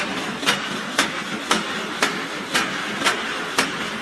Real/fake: real